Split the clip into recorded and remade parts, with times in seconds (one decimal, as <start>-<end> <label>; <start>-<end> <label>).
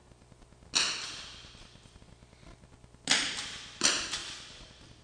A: 0.0-5.0 recorded